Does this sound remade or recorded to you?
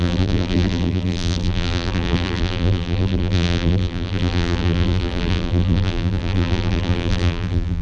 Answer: remade